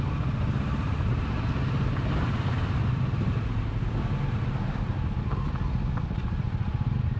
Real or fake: real